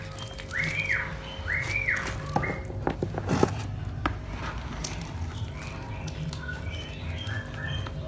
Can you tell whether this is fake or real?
real